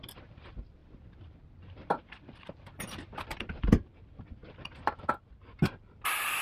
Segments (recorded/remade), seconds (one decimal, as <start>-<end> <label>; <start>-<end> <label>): 0.0-0.8 recorded; 0.8-3.4 remade; 3.4-6.4 recorded